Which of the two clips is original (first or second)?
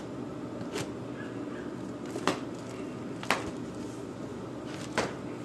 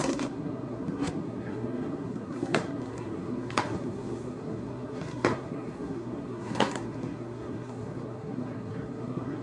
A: first